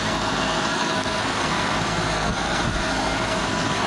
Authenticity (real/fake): fake